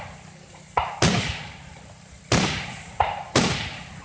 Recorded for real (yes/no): no